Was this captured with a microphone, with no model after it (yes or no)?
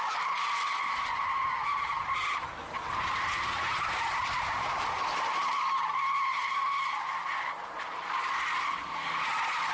yes